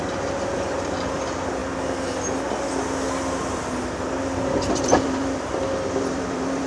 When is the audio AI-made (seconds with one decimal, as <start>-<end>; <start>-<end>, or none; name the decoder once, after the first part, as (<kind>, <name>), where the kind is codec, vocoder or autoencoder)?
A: 0.0-1.6 (vocoder, BigVGAN v2); 4.7-6.7